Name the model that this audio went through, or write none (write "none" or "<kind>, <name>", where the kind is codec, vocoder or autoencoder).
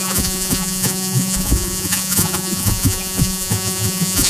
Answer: vocoder, Vocos